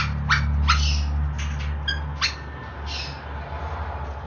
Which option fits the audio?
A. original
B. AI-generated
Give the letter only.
A